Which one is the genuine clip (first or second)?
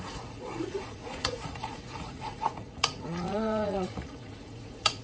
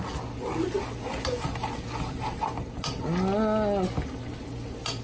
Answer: second